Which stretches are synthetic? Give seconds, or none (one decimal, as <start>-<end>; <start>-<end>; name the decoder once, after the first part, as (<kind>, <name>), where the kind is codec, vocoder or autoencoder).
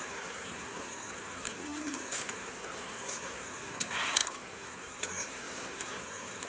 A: 0.0-6.5 (codec, SNAC)